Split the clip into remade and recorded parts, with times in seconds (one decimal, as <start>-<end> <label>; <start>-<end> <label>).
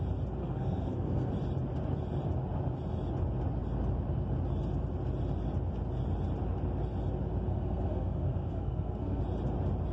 0.0-0.4 recorded; 0.4-1.3 remade; 1.3-7.5 recorded; 7.5-9.2 remade; 9.2-9.9 recorded